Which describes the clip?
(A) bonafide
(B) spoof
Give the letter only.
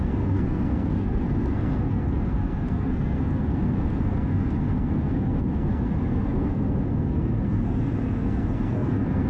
B